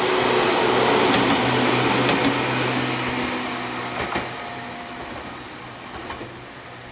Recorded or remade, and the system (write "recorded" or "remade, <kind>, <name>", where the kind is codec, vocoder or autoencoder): recorded